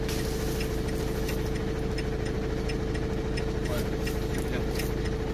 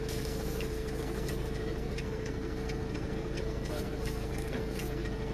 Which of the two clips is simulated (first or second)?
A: second